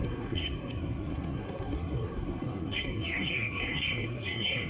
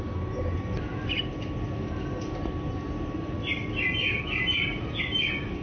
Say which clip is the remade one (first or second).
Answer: first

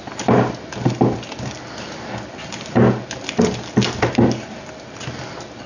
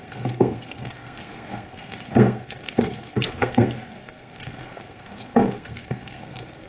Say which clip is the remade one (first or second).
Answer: second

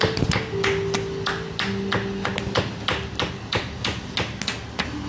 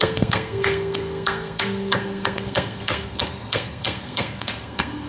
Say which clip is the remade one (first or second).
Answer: second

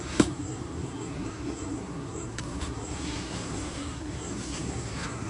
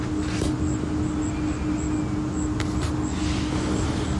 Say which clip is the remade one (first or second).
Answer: first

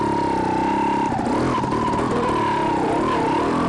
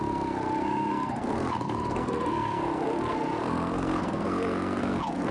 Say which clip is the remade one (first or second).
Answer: second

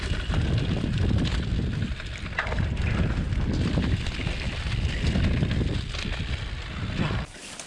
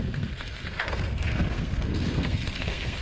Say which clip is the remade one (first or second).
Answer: second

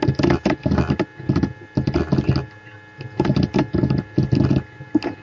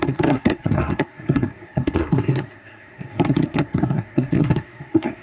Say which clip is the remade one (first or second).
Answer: second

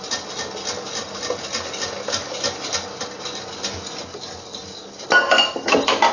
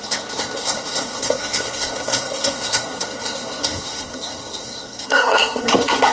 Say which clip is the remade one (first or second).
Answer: second